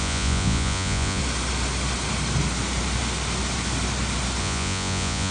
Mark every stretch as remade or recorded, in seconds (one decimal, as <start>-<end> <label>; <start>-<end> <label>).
0.0-1.2 remade; 1.2-4.4 recorded; 4.4-5.3 remade